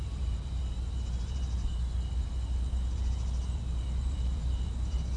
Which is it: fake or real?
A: fake